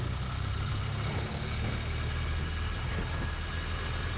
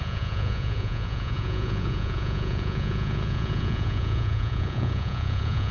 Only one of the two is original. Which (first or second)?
first